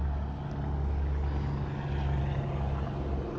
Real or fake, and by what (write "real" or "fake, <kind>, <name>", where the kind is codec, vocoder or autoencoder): real